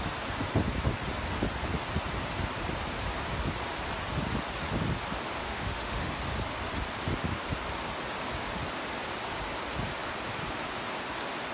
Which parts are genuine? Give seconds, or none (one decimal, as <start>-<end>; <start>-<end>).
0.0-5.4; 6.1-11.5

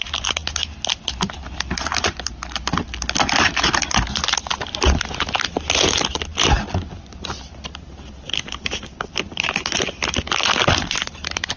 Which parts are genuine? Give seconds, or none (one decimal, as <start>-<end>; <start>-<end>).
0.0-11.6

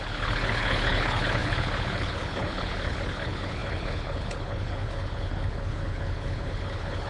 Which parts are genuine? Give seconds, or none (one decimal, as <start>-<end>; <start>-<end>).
none

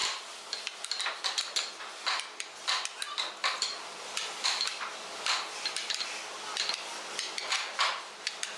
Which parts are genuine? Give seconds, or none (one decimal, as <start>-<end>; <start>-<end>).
0.0-3.4; 5.3-8.6

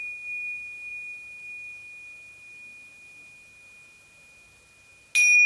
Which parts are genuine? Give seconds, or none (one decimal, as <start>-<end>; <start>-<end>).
0.0-5.5

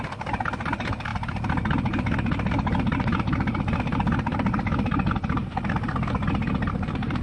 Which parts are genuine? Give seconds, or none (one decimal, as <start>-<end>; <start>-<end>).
0.0-7.2